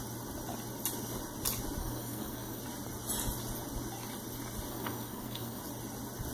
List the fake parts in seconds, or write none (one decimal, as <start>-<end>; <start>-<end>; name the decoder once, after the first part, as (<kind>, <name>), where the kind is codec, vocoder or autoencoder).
1.8-2.6 (codec, SNAC); 4.7-5.6